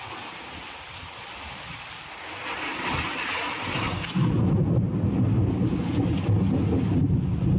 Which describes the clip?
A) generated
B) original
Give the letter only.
B